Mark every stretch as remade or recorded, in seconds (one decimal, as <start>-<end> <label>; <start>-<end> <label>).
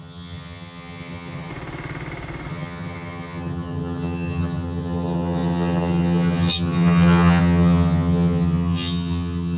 0.0-1.5 remade; 1.5-2.5 recorded; 2.5-9.6 remade